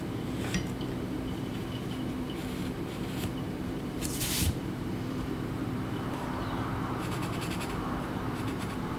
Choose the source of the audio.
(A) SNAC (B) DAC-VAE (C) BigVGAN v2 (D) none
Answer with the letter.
C